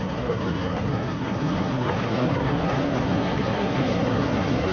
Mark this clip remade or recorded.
remade